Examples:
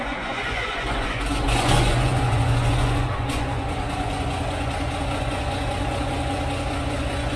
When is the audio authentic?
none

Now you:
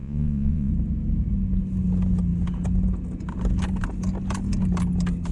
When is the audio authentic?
0.7-5.3

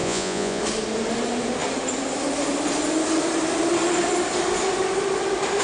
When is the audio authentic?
0.6-5.6

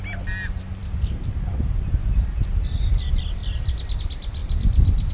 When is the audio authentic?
0.0-5.1

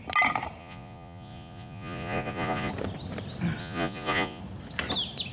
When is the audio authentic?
0.0-0.6; 2.7-3.6; 4.4-5.3

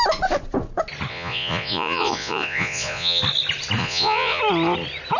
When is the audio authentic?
0.0-1.1; 3.2-3.8; 4.4-5.2

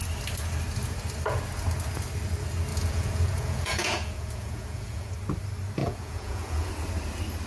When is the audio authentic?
0.0-2.7; 5.1-5.8; 6.7-7.5